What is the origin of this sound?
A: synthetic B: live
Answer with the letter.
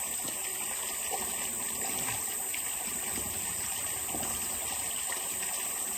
B